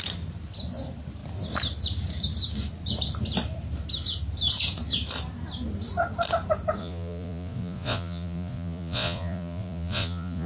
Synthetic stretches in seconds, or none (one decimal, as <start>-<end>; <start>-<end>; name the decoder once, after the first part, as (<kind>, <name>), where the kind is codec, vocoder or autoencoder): 6.8-10.5 (vocoder, Vocos)